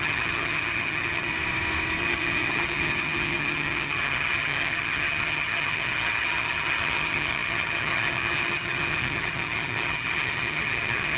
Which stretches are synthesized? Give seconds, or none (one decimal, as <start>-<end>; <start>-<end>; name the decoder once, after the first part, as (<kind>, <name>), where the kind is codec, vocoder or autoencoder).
0.0-1.3 (vocoder, HiFi-GAN); 2.0-11.2